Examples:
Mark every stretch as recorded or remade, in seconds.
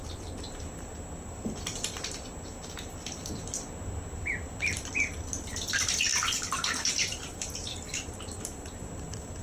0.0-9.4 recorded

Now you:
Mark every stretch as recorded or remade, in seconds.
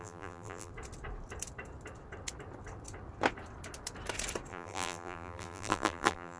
0.0-0.7 remade; 0.7-4.5 recorded; 4.5-6.4 remade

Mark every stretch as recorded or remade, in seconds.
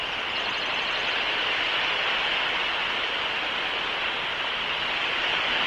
0.0-5.7 recorded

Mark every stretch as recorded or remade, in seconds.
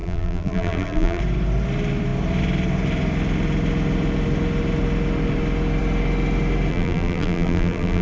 0.0-1.2 remade; 1.2-6.7 recorded; 6.7-8.0 remade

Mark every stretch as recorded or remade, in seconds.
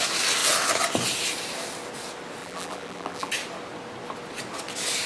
0.0-2.4 recorded; 2.4-3.3 remade; 3.3-5.1 recorded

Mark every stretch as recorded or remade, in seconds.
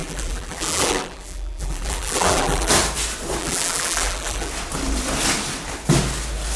0.0-2.7 remade; 2.7-3.4 recorded; 3.4-4.5 remade; 4.5-6.6 recorded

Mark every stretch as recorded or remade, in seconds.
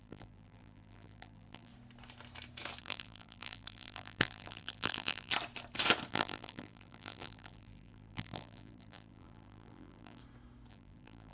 0.0-1.7 remade; 1.7-2.8 recorded; 2.8-5.3 remade; 5.3-6.1 recorded; 6.1-10.2 remade; 10.2-10.7 recorded; 10.7-11.3 remade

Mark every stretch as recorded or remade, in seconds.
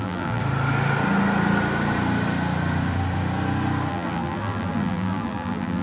0.0-0.4 remade; 0.4-3.9 recorded; 3.9-5.8 remade